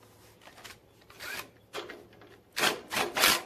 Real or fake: real